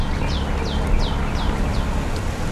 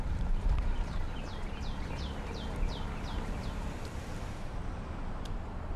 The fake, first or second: second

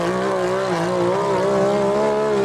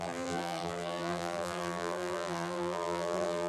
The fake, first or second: second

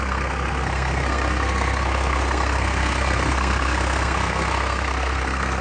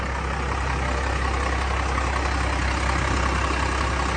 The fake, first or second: first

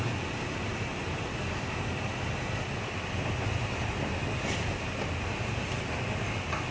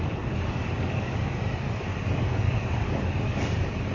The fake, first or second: second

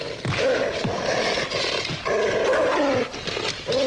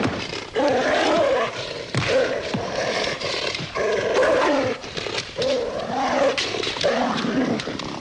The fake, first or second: second